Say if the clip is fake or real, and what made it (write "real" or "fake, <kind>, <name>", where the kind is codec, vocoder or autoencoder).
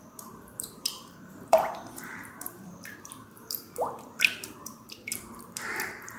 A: fake, vocoder, BigVGAN v2